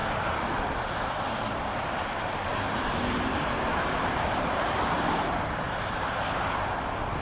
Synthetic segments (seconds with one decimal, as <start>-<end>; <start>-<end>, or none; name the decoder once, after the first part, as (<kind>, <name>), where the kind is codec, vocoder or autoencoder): 2.5-6.4 (vocoder, BigVGAN v2)